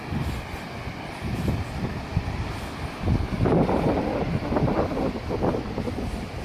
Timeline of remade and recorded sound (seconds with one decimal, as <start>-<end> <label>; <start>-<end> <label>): 0.0-6.4 recorded